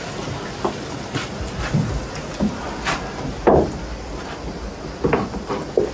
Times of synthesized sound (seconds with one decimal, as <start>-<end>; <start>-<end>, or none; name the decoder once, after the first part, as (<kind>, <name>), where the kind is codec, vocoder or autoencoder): none